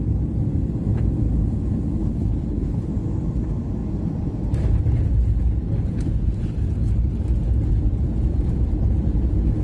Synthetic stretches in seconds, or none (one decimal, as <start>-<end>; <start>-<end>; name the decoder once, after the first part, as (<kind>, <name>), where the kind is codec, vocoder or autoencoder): 2.0-2.9 (codec, HILCodec)